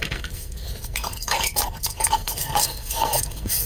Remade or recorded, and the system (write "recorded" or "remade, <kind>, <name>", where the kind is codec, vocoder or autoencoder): remade, codec, SNAC